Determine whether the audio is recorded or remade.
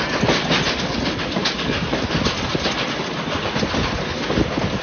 recorded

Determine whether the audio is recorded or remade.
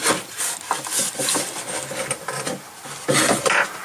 recorded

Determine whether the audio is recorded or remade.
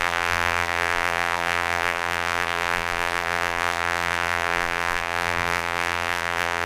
remade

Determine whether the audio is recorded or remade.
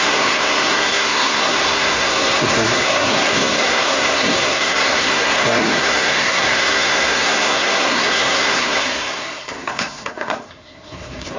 remade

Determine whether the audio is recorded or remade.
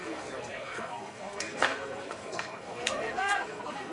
remade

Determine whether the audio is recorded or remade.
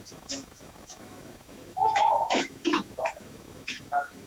remade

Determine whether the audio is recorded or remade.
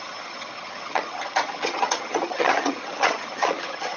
remade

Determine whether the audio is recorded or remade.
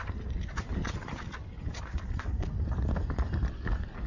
recorded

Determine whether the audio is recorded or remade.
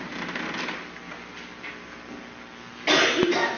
recorded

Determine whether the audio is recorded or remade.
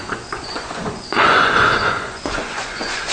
remade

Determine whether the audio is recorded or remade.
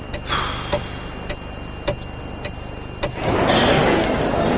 recorded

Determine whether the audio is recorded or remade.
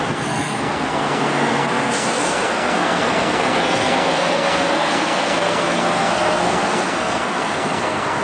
remade